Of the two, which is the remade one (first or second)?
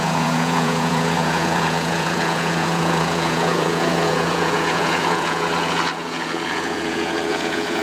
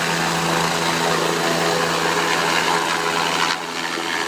first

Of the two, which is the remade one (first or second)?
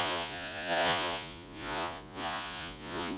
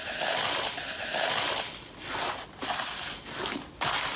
first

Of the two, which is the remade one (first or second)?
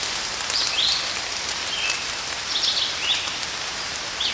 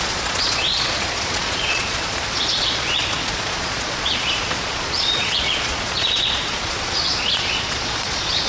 second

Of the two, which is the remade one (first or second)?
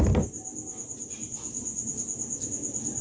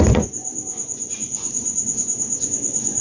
second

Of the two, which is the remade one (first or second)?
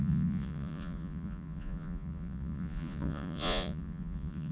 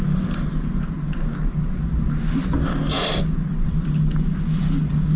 first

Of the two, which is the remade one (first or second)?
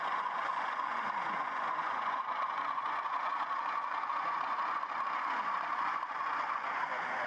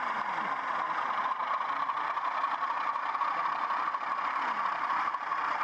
first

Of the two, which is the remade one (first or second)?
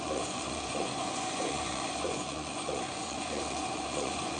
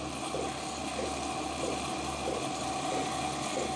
first